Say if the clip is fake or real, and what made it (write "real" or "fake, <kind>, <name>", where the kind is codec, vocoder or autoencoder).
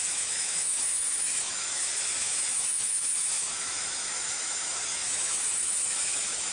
fake, autoencoder, DAC-VAE